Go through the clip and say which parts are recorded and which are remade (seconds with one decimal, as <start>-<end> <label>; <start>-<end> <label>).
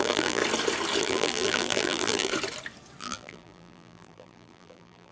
0.0-0.4 remade; 0.4-1.0 recorded; 1.0-2.3 remade; 2.3-3.0 recorded; 3.0-5.1 remade